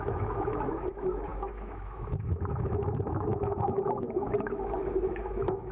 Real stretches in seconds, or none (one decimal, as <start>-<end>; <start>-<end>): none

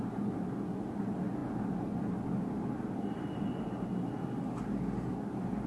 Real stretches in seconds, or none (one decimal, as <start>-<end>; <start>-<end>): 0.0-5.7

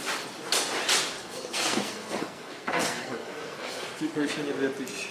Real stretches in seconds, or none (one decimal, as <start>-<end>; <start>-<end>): 0.0-1.2; 4.3-5.1

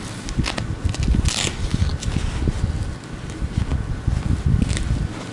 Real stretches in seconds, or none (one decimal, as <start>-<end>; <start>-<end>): 0.0-5.3

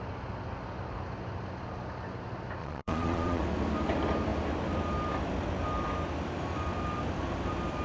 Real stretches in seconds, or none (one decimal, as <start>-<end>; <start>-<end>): 0.0-2.6; 3.4-7.8

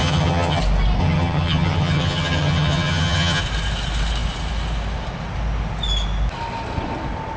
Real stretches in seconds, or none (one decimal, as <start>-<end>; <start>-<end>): 0.6-1.0; 3.4-7.4